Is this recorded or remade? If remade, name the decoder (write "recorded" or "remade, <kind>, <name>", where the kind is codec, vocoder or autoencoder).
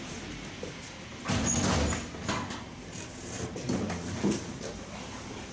recorded